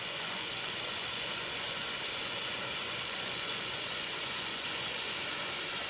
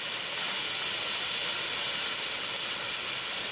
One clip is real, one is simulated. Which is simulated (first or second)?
first